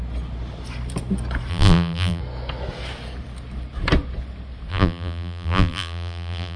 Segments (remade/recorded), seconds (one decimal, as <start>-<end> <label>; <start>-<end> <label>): 0.0-1.5 recorded; 1.5-2.2 remade; 2.2-4.7 recorded; 4.7-6.6 remade